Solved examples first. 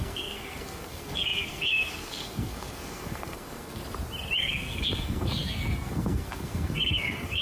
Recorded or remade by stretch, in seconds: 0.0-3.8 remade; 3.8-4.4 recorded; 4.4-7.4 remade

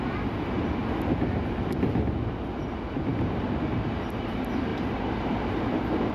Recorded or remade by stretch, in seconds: 0.0-4.7 recorded; 4.7-6.1 remade

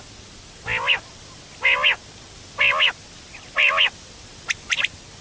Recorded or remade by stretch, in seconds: 0.0-5.2 recorded